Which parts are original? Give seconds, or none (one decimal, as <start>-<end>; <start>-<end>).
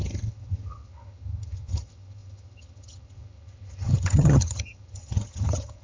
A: none